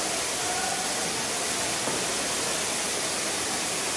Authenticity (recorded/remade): recorded